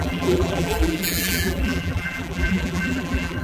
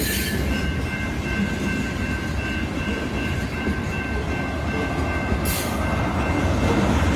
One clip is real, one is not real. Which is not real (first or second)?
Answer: first